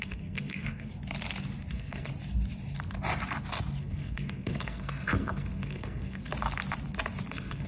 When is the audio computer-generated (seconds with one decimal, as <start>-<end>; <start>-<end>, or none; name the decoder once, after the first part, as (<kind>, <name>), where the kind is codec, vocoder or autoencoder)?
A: 0.0-0.9 (codec, SNAC); 1.7-2.1; 3.8-6.3; 7.3-7.7